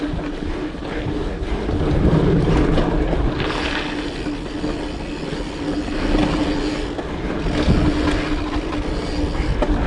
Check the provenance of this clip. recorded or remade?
recorded